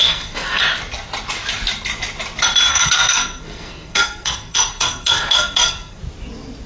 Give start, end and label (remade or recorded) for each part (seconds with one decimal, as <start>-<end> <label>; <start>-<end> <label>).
0.0-0.6 remade; 0.6-2.7 recorded; 2.7-6.0 remade; 6.0-6.7 recorded